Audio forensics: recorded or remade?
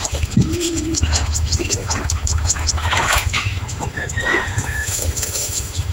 remade